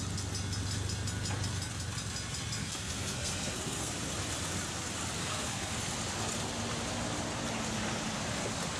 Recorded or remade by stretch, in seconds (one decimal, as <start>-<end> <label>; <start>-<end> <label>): 0.0-2.6 recorded; 2.6-3.9 remade; 3.9-5.2 recorded; 5.2-5.7 remade; 5.7-8.8 recorded